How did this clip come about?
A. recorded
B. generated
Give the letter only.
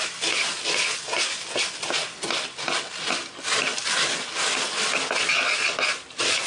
A